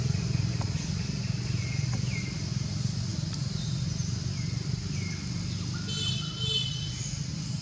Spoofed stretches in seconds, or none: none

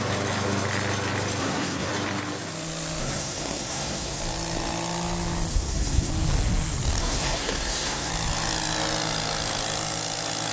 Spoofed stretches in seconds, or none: 1.4-1.9 (codec, SNAC); 3.0-4.2; 5.5-6.1; 7.0-8.1